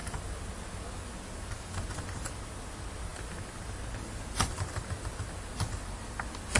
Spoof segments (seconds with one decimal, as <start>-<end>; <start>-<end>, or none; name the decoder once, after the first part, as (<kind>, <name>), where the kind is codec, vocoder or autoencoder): none